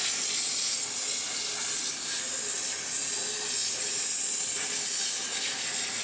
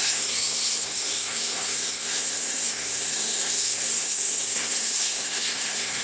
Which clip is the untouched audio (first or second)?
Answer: first